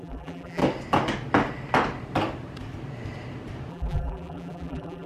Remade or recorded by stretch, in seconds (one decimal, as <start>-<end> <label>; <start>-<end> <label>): 0.0-0.6 remade; 0.6-3.7 recorded; 3.7-5.1 remade